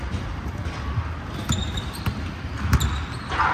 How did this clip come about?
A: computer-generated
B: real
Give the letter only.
B